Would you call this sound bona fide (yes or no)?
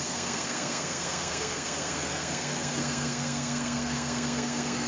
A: no